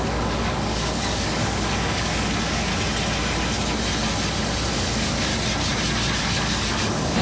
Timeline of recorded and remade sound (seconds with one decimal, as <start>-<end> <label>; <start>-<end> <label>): 0.0-2.7 remade; 2.7-4.7 recorded; 4.7-5.3 remade; 5.3-6.2 recorded; 6.2-7.2 remade